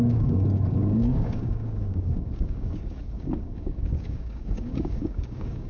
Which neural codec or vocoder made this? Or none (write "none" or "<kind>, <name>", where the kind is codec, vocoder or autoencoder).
codec, DAC